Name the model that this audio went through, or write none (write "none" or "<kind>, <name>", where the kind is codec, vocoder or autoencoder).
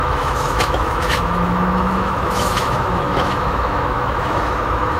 autoencoder, DAC-VAE